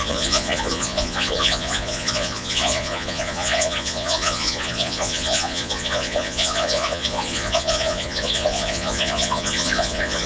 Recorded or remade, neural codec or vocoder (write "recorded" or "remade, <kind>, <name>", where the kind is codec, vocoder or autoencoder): remade, vocoder, Vocos